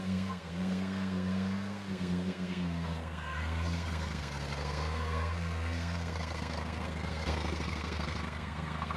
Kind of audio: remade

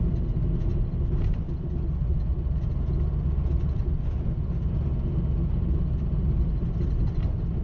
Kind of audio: recorded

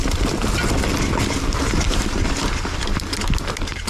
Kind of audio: recorded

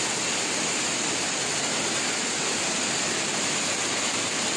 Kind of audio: recorded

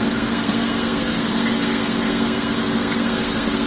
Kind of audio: remade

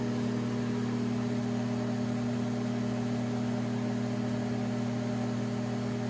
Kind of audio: recorded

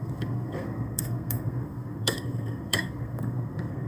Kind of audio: remade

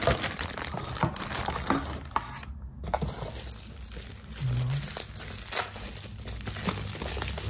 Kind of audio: recorded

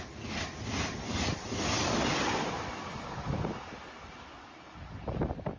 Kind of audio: recorded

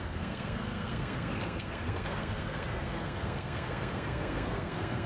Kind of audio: remade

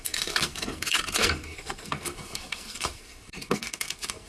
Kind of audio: remade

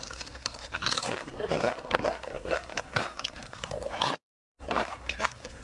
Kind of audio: remade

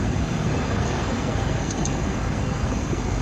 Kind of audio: remade